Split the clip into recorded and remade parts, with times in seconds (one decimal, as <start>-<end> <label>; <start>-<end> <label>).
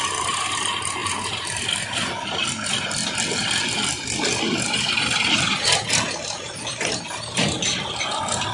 0.0-8.5 recorded